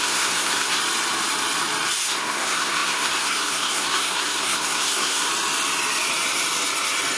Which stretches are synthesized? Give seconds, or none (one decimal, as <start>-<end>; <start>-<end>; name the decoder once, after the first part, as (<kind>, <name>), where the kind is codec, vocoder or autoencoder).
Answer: 0.0-0.8 (codec, SNAC); 2.0-5.3